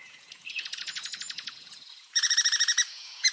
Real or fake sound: fake